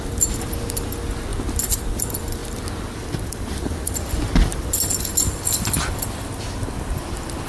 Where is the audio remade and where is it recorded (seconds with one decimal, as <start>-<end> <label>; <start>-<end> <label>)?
0.0-1.3 recorded; 1.3-2.0 remade; 2.0-2.4 recorded; 2.4-6.4 remade; 6.4-7.5 recorded